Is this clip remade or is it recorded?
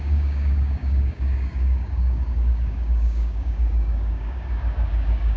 remade